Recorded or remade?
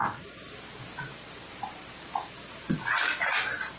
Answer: recorded